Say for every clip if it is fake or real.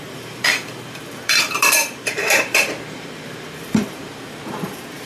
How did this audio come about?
fake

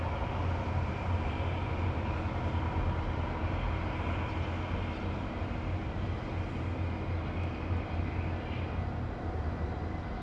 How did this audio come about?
real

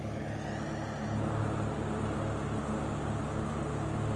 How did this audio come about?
real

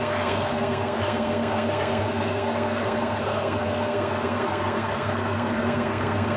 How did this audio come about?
fake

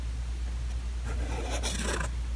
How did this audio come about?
real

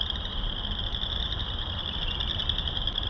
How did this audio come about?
real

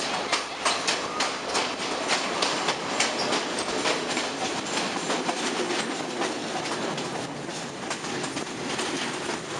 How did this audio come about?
real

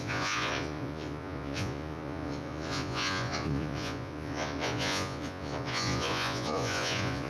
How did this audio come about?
fake